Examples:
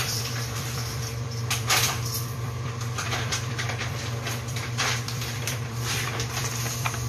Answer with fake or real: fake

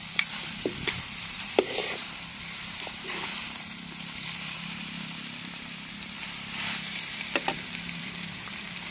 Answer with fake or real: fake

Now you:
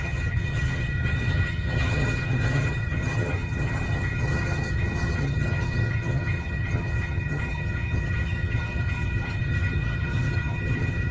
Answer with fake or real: fake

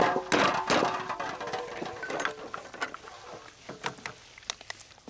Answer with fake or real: real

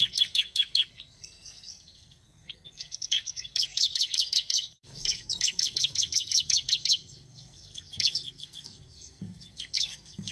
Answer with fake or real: fake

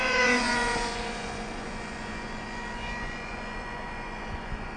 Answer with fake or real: fake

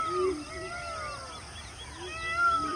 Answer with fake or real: real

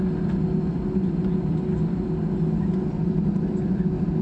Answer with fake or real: real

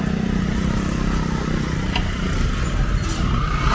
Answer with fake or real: real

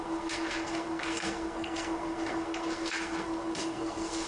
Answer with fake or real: fake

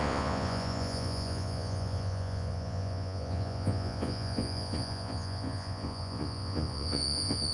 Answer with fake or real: fake